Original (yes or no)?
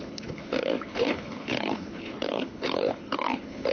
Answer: no